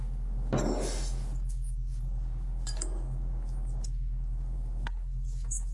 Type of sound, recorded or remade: recorded